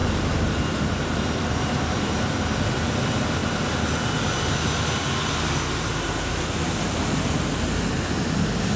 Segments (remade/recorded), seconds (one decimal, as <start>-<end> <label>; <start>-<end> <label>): 0.0-2.2 remade; 2.2-8.8 recorded